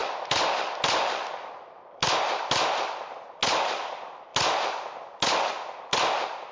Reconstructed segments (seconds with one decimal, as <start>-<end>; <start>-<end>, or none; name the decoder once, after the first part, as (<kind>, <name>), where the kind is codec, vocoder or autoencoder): none